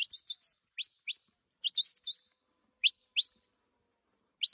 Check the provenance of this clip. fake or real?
real